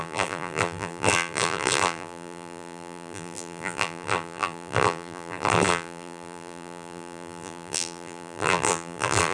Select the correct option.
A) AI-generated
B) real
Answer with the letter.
A